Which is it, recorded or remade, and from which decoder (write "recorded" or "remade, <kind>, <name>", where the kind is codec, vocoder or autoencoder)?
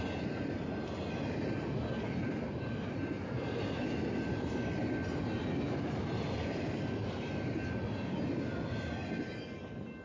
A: recorded